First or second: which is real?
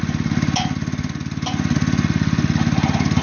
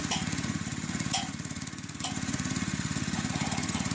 first